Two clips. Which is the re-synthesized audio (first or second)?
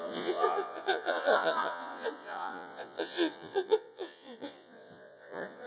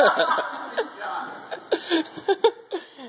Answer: first